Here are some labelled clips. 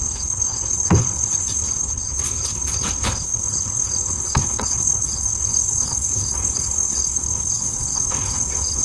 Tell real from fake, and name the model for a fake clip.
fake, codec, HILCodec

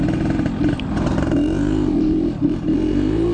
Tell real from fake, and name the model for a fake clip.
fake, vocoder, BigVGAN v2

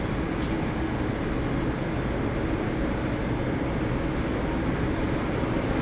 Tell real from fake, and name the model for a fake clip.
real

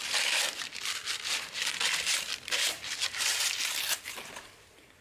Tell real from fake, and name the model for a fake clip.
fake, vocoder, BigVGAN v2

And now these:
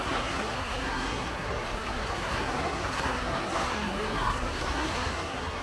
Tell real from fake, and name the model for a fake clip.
fake, codec, SNAC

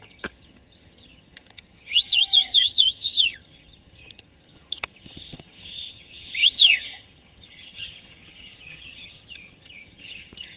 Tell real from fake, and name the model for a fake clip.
fake, vocoder, HiFi-GAN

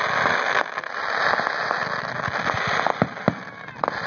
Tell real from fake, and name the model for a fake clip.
real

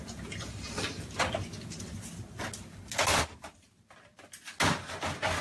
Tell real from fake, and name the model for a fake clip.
real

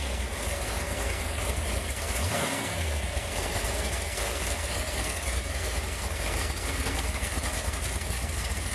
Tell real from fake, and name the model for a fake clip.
fake, codec, SNAC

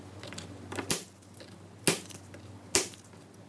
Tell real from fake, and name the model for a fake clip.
real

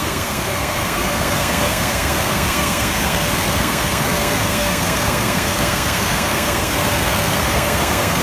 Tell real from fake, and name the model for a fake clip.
fake, codec, SNAC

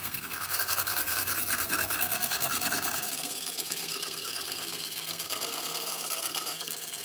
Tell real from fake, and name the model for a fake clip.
fake, codec, SNAC